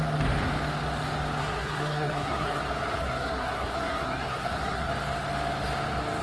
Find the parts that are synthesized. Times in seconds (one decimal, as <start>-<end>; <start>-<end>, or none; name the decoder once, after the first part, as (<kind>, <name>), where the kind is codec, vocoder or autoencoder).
1.4-2.6 (codec, SNAC); 3.0-4.9